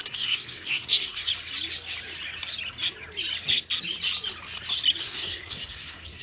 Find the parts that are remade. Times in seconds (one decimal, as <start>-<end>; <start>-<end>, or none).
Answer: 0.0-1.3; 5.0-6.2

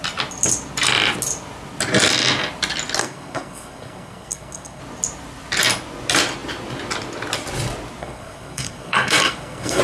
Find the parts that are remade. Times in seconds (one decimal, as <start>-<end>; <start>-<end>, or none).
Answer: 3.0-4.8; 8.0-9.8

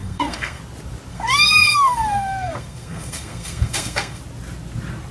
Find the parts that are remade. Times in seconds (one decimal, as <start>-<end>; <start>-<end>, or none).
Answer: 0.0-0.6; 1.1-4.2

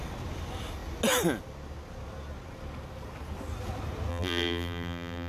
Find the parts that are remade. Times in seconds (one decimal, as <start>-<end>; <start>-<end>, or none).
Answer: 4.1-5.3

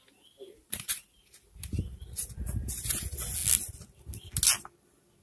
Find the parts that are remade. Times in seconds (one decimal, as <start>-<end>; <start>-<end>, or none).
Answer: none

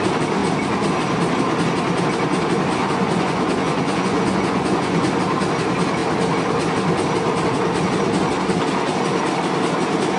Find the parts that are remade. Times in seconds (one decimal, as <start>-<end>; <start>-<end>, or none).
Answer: 2.8-5.1

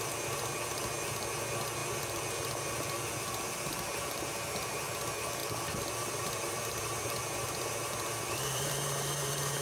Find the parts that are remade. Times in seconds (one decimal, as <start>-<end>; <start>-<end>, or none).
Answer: 1.8-2.3; 5.4-8.7

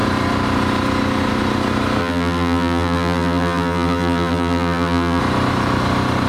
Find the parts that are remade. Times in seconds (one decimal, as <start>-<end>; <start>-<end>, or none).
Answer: 2.0-5.2